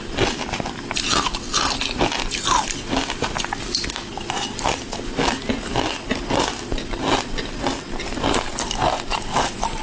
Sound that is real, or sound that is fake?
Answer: real